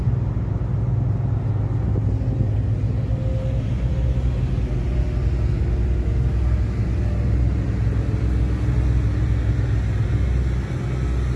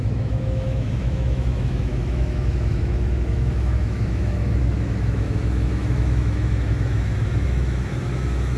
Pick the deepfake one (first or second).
second